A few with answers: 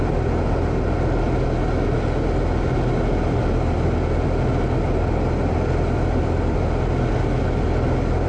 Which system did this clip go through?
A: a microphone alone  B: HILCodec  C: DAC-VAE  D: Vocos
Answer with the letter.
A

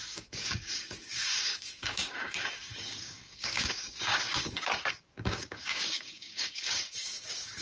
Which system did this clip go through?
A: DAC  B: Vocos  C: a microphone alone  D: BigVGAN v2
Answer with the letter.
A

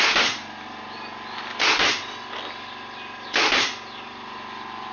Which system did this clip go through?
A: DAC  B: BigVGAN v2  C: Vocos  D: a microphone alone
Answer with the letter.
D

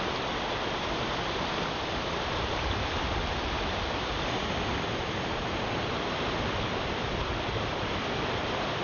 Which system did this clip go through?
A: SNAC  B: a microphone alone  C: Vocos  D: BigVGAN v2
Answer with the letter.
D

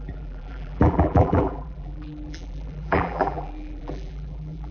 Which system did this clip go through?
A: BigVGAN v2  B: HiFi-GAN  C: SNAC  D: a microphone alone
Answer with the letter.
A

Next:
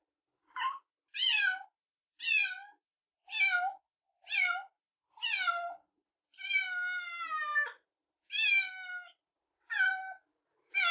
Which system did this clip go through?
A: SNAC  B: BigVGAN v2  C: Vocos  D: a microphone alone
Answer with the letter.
D